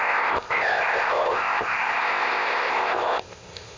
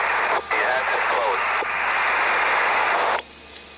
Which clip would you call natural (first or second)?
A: second